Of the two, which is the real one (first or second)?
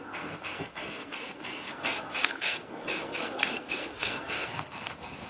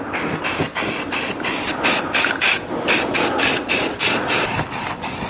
second